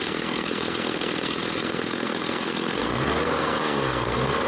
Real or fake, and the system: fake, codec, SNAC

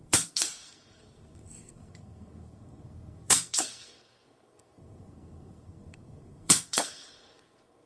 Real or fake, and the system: fake, codec, SNAC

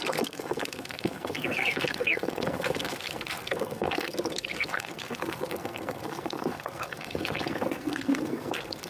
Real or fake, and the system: fake, codec, SNAC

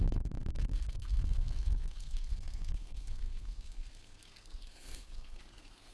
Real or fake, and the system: fake, codec, SNAC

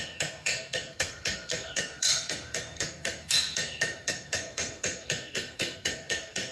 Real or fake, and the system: fake, codec, SNAC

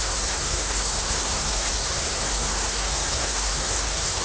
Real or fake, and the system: fake, codec, SNAC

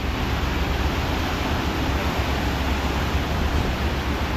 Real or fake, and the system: real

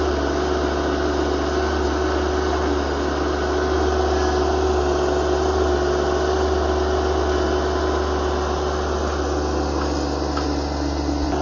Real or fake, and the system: real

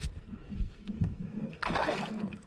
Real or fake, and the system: fake, codec, SNAC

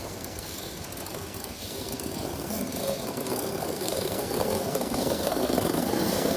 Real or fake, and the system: fake, codec, SNAC